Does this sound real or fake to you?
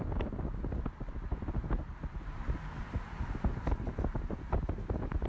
real